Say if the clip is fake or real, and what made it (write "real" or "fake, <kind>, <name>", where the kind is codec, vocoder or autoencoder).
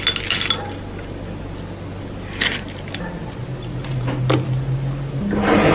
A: real